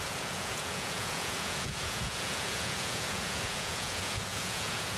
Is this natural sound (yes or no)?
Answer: no